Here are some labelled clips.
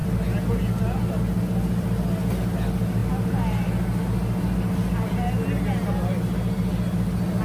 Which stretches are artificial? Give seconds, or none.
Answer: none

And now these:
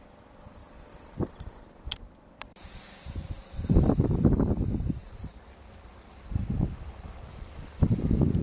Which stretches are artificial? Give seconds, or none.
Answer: 0.0-8.4 (vocoder, BigVGAN v2)

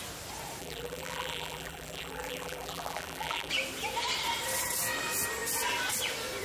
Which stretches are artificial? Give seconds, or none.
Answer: 0.6-3.5 (vocoder, BigVGAN v2)

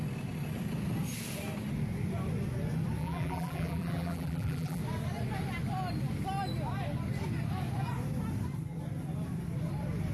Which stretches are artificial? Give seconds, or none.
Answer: 3.0-4.8 (vocoder, BigVGAN v2)

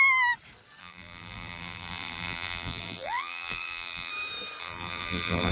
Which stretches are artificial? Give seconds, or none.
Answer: 0.8-4.1 (vocoder, BigVGAN v2); 4.6-5.5